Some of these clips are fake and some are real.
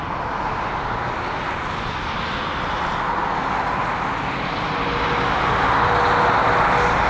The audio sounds real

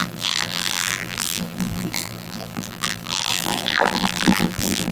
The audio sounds fake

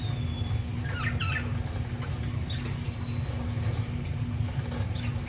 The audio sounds real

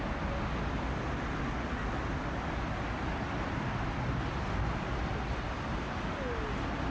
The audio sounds real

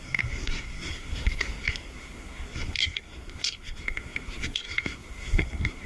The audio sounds fake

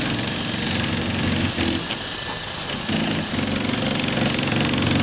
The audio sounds real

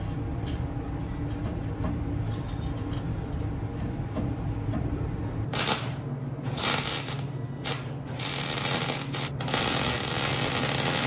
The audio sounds real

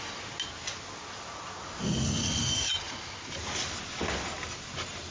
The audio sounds real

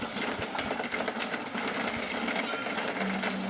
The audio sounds real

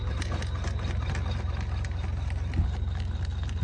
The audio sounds real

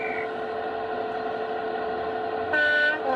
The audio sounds real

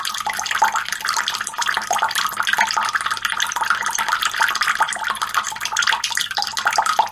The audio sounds real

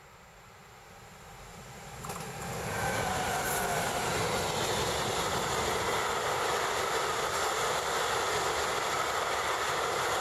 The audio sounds real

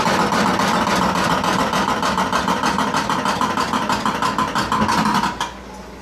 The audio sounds real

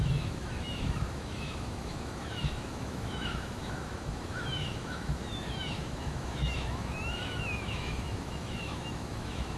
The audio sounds fake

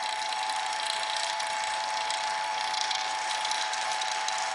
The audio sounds fake